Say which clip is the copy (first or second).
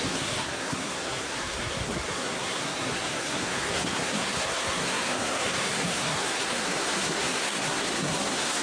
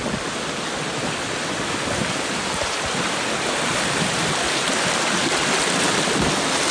first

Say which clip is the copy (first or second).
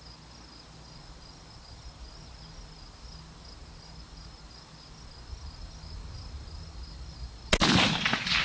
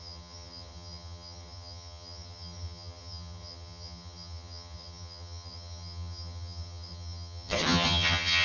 second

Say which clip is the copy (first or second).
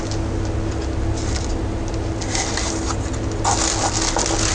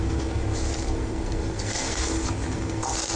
second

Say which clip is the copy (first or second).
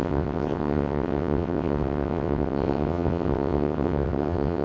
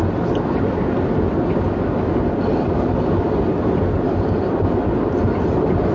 first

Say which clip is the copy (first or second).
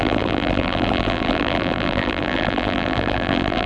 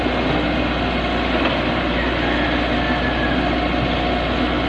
first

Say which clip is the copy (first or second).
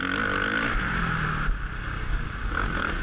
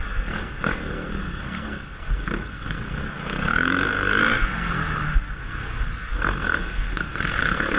second